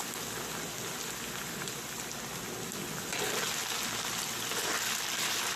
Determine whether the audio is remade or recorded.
recorded